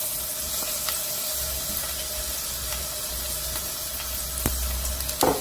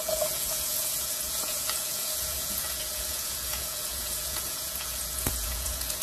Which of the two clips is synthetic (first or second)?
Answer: second